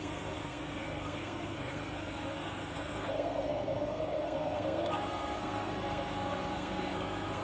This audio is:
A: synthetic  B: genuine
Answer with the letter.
A